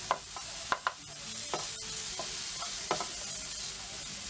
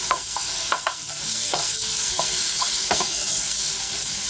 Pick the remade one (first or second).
second